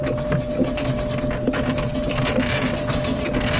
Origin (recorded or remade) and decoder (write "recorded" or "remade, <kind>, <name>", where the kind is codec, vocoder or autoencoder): recorded